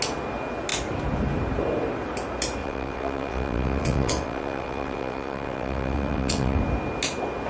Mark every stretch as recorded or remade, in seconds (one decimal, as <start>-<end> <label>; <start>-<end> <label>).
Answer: 0.0-2.6 recorded; 2.6-6.6 remade; 6.6-7.5 recorded

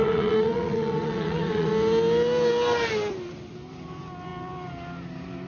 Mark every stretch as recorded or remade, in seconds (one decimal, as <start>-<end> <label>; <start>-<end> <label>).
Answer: 0.0-1.7 remade; 1.7-5.5 recorded

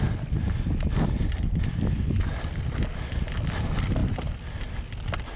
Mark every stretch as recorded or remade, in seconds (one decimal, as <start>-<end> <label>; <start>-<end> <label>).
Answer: 0.0-5.4 recorded

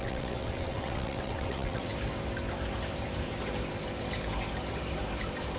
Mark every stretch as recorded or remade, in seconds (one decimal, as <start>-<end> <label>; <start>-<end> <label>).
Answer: 0.0-1.9 remade; 1.9-5.6 recorded

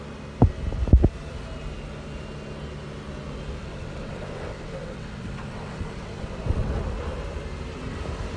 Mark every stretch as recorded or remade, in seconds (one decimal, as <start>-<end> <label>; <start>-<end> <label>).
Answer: 0.0-3.6 recorded; 3.6-6.8 remade; 6.8-8.4 recorded

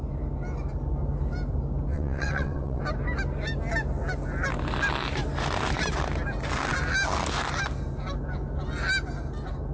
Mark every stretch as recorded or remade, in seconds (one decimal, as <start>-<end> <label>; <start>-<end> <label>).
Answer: 0.0-1.9 recorded; 1.9-2.8 remade; 2.8-9.7 recorded

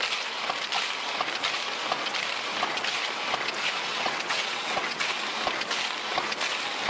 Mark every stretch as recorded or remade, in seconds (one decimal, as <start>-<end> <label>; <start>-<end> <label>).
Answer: 0.0-3.9 recorded; 3.9-5.2 remade; 5.2-6.9 recorded